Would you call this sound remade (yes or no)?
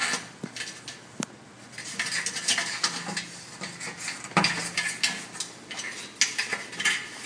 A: no